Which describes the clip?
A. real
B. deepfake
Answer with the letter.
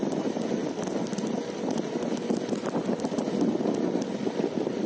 A